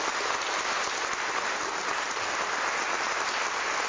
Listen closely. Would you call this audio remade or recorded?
recorded